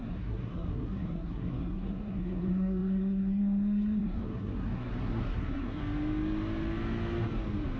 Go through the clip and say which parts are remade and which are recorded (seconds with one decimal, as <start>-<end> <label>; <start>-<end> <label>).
0.0-5.8 remade; 5.8-7.8 recorded